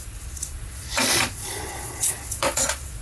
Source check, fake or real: fake